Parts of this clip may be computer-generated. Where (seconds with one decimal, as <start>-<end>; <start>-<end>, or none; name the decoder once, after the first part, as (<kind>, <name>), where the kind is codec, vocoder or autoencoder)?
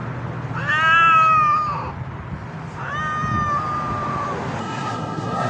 4.6-5.5 (codec, SNAC)